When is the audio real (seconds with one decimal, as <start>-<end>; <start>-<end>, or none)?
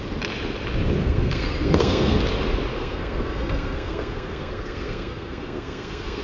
0.0-1.0; 2.2-2.7